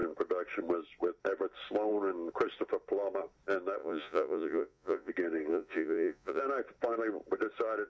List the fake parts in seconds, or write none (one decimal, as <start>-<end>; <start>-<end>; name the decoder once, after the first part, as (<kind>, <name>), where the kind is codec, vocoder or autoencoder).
3.8-5.1 (vocoder, Vocos); 5.5-6.4